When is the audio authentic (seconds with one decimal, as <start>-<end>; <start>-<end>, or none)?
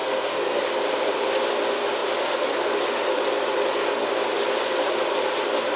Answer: 0.6-5.8